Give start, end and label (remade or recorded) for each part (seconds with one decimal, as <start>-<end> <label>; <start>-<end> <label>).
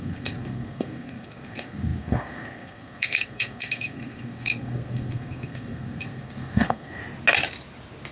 0.0-7.0 remade; 7.0-8.1 recorded